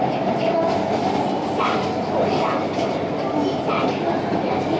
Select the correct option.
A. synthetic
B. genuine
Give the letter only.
B